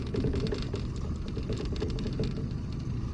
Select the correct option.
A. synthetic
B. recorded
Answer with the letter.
B